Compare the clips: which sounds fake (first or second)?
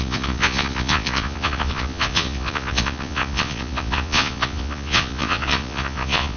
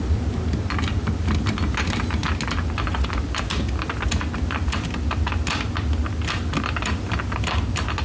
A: first